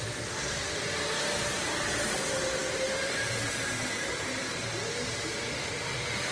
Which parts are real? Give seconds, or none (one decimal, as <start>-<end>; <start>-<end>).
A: 0.0-6.3